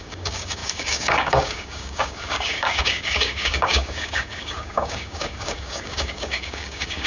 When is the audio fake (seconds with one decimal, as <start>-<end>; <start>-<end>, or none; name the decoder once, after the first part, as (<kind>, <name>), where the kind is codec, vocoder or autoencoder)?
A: 0.0-7.1 (codec, DAC)